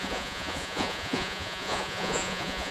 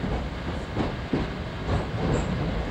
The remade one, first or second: first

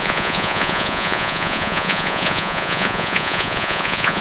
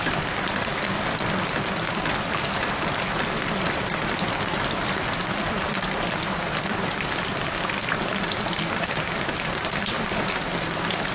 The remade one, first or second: first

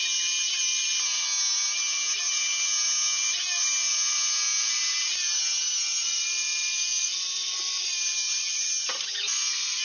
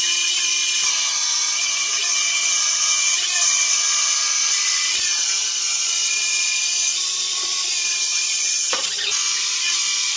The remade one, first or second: second